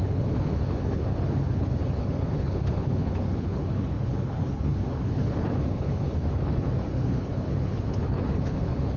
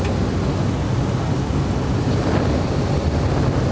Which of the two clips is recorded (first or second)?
second